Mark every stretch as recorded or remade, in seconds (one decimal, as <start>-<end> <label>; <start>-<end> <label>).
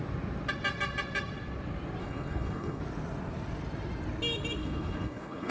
0.0-2.0 recorded; 2.0-2.8 remade; 2.8-4.6 recorded; 4.6-5.5 remade